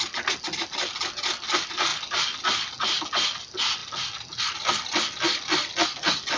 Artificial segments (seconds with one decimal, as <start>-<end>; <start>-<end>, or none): none